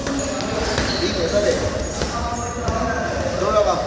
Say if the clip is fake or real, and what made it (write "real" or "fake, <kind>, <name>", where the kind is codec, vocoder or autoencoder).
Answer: real